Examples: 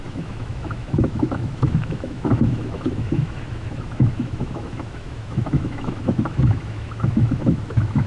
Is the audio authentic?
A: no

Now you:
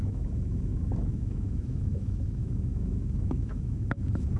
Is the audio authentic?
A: no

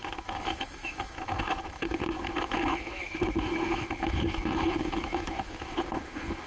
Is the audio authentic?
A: no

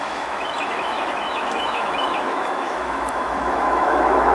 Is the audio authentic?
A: no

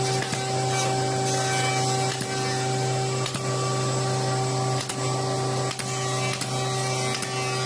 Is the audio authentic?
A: yes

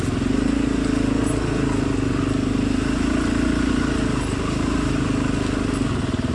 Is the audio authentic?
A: yes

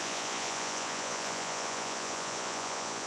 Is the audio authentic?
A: no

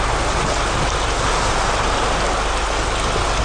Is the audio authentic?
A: yes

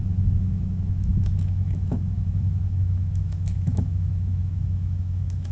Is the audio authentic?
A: no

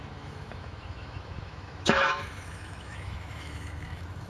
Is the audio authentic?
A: no